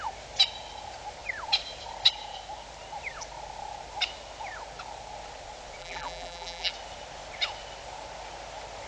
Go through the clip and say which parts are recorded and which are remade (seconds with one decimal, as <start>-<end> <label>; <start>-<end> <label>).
0.0-5.8 recorded; 5.8-6.7 remade; 6.7-8.9 recorded